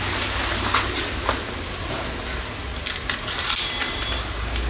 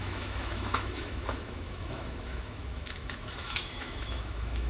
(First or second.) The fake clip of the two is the second